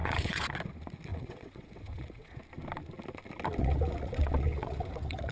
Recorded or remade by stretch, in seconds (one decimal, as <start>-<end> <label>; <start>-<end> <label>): 0.0-0.5 remade; 0.5-1.1 recorded; 1.1-2.4 remade; 2.4-3.6 recorded; 3.6-5.3 remade